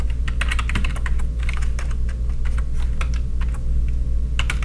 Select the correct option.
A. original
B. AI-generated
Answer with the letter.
A